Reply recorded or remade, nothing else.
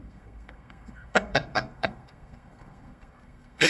remade